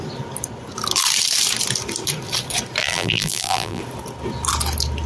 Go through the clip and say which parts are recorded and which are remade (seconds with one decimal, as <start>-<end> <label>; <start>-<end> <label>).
0.0-2.8 recorded; 2.8-3.8 remade; 3.8-5.1 recorded